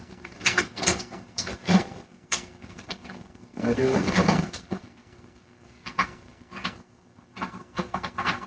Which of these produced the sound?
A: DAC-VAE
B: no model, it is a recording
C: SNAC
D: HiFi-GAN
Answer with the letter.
C